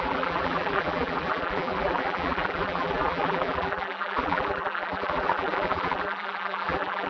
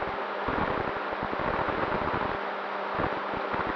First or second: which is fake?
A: first